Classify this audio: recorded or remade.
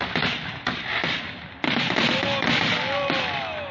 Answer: recorded